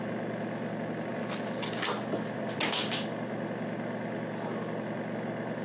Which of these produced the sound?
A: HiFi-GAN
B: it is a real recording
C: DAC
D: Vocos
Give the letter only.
B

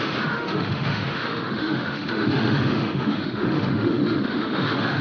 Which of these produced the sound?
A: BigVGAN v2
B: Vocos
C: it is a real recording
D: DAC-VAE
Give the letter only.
D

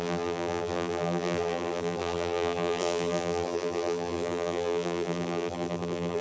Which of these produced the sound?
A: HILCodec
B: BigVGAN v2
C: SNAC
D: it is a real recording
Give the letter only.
B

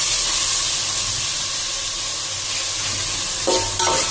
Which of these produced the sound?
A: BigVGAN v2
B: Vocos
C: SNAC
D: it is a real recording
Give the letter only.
D